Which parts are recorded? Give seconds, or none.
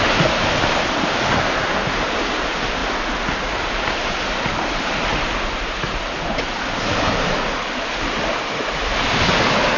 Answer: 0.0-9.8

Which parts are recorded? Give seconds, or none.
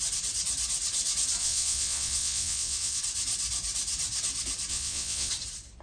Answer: 0.0-1.4; 3.0-4.7; 5.3-5.8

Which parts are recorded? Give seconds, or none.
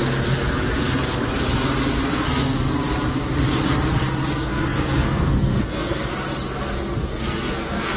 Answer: 0.0-2.1; 2.7-4.3; 6.1-7.1